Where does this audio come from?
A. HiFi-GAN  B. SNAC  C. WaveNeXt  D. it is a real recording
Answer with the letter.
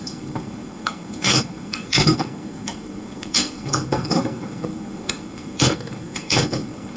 B